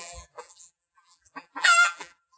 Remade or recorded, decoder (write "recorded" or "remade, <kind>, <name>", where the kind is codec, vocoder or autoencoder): remade, vocoder, BigVGAN v2